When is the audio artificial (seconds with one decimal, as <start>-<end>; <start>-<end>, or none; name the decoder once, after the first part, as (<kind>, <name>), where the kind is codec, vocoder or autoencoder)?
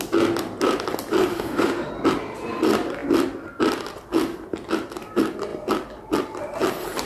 1.3-1.9 (autoencoder, DAC-VAE)